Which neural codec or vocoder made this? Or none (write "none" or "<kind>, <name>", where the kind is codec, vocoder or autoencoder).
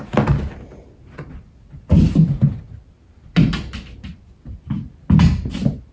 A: none